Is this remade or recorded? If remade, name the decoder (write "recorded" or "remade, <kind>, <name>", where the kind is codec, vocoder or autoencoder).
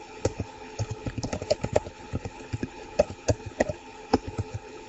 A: remade, codec, HILCodec